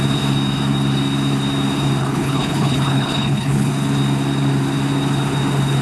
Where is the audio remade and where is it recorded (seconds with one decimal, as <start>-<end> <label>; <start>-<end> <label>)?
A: 0.0-2.0 recorded; 2.0-3.7 remade; 3.7-5.8 recorded